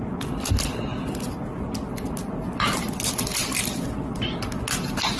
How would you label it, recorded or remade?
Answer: recorded